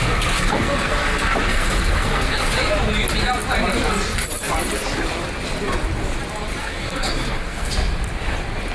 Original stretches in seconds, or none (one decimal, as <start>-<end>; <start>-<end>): 2.5-6.6; 7.7-8.7